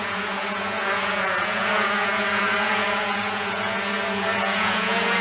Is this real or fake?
fake